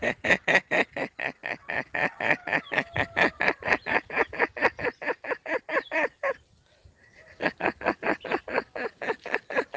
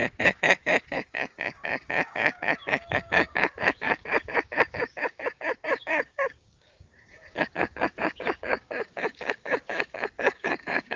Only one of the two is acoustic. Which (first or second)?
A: first